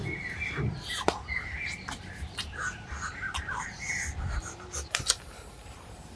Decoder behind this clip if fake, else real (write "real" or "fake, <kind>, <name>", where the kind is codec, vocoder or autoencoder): real